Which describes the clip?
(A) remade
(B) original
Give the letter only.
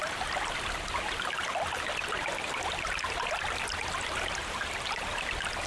B